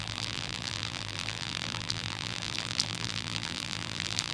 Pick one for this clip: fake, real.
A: fake